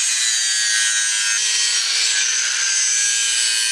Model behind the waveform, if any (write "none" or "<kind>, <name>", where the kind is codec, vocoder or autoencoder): none